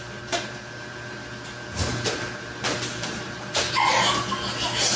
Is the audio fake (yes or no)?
no